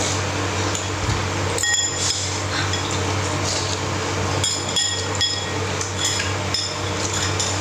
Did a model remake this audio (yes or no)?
no